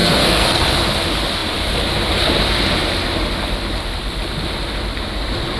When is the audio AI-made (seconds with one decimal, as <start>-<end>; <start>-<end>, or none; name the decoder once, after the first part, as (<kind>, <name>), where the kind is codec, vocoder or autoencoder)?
0.0-0.7 (codec, SNAC)